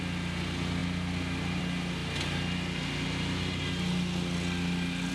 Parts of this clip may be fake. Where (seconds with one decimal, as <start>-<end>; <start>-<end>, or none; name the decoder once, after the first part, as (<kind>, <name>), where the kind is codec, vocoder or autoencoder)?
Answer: none